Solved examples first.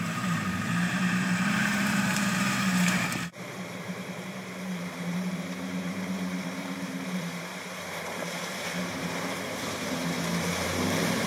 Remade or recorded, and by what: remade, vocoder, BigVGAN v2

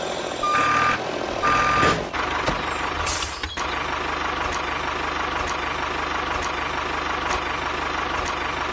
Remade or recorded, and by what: recorded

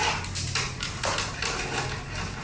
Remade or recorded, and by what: recorded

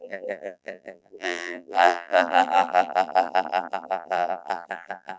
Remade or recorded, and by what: remade, vocoder, BigVGAN v2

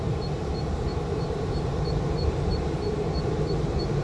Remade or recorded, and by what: remade, vocoder, BigVGAN v2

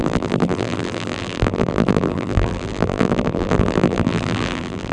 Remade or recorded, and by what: remade, vocoder, BigVGAN v2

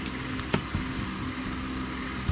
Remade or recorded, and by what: recorded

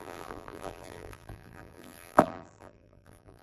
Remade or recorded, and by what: remade, vocoder, BigVGAN v2